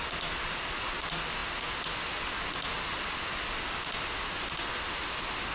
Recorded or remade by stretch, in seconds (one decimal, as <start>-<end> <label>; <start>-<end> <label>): 0.0-5.5 recorded